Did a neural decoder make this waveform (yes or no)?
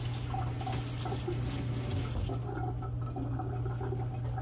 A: no